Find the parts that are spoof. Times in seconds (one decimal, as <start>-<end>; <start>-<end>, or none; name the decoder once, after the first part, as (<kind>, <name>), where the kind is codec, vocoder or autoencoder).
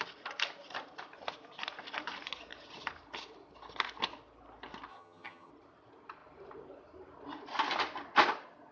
4.9-5.5 (vocoder, HiFi-GAN)